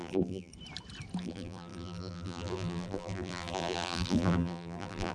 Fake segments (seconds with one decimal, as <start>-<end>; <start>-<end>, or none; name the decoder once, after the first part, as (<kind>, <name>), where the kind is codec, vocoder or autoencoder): 0.0-0.5 (vocoder, BigVGAN v2); 1.2-5.1

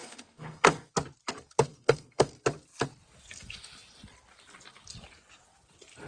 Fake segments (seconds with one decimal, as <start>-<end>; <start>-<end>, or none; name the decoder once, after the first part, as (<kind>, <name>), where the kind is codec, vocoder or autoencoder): 0.0-0.9 (codec, SNAC); 1.7-2.3

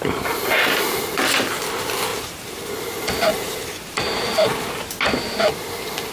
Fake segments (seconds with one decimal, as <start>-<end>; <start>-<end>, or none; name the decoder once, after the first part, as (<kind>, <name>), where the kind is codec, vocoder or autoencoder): 2.1-2.8 (vocoder, BigVGAN v2); 3.3-4.7

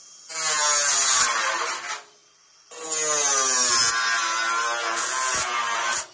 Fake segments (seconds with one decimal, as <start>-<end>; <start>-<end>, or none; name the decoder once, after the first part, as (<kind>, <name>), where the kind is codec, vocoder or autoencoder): none

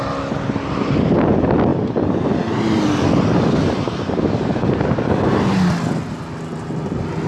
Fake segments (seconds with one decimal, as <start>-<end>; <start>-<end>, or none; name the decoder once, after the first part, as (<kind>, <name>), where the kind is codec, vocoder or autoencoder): none